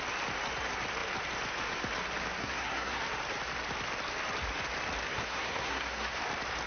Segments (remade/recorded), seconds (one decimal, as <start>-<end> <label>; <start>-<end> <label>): 0.0-2.4 recorded; 2.4-3.0 remade; 3.0-5.1 recorded; 5.1-6.2 remade; 6.2-6.7 recorded